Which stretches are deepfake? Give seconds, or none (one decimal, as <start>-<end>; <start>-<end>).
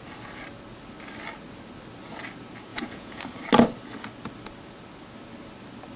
2.7-3.2